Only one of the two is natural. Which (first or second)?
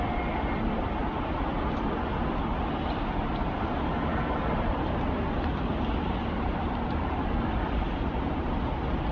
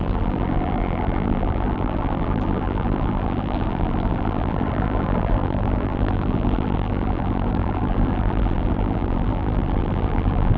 first